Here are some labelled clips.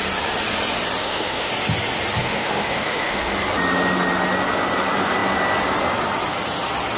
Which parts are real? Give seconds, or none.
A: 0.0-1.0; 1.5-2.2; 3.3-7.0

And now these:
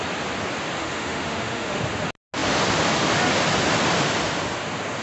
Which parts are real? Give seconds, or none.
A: 0.0-0.8; 1.8-5.0

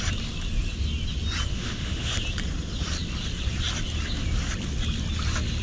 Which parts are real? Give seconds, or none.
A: 0.0-1.5; 2.1-5.6

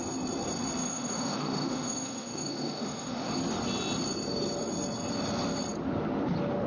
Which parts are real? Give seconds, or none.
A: 0.0-0.8; 3.3-6.7